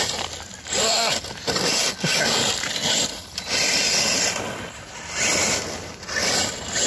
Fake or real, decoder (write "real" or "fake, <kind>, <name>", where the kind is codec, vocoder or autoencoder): real